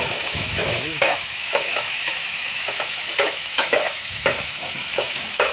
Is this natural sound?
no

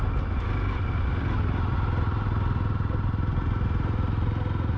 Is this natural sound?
yes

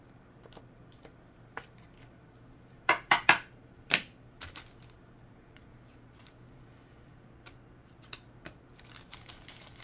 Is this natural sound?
no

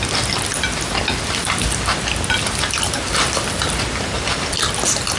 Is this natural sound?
yes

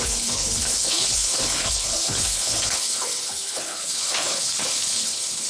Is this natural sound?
no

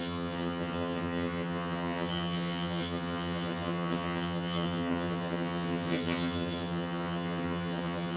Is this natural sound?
no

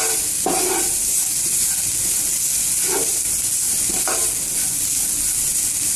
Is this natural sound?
yes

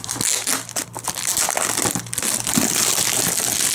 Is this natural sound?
yes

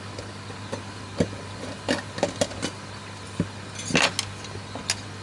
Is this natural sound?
yes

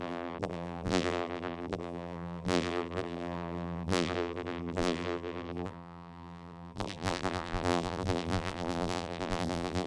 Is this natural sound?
no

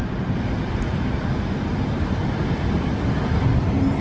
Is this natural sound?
yes